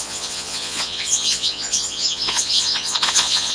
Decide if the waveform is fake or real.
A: fake